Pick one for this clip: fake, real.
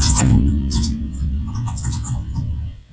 fake